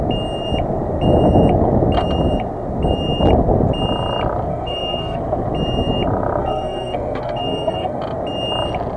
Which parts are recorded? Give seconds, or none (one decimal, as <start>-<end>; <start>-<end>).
0.0-4.5; 5.2-6.4; 8.0-9.0